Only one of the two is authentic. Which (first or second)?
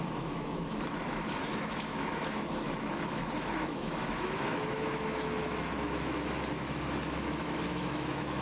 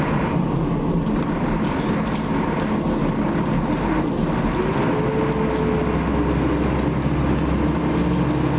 second